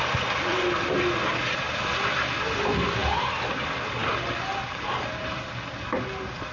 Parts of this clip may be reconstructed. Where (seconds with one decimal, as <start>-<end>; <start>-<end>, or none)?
none